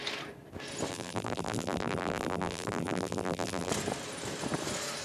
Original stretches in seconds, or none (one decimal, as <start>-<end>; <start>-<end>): 0.0-0.9; 3.7-5.0